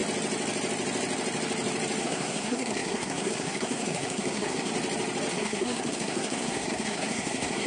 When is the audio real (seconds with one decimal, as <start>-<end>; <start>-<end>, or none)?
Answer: 0.0-2.0; 4.7-5.3